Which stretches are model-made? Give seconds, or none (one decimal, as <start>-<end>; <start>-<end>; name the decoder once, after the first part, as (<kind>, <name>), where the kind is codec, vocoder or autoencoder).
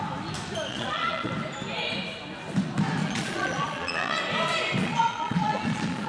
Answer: 0.7-1.3 (vocoder, Vocos); 3.0-4.2; 4.8-6.1